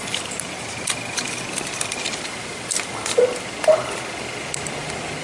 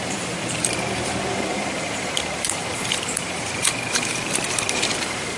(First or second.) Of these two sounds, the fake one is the second